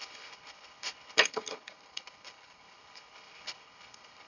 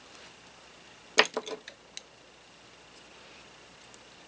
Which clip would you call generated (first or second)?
first